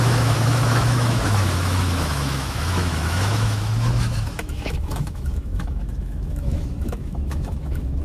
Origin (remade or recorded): remade